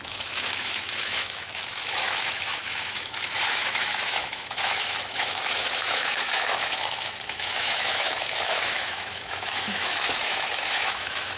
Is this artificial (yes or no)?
yes